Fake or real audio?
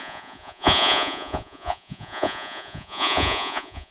fake